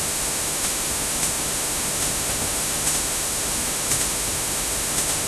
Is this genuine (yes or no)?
no